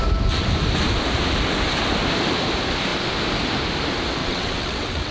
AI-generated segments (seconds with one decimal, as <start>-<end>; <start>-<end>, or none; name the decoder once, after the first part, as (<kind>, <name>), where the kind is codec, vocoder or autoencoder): 4.2-5.1 (vocoder, WaveNeXt)